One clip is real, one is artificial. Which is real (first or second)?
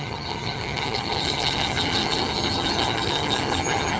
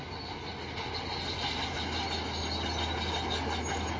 second